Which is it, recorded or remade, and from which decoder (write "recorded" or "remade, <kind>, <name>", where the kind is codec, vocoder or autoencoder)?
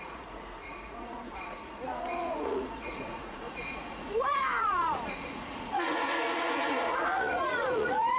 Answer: remade, vocoder, Vocos